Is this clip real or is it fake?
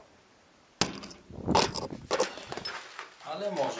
real